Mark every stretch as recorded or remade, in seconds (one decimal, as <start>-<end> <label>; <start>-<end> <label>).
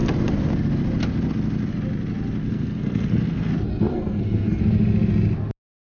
0.0-2.4 recorded; 2.4-3.5 remade; 3.5-3.9 recorded; 3.9-4.6 remade; 4.6-5.9 recorded